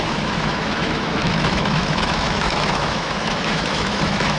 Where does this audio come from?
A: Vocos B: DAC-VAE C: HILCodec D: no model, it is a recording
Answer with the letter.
B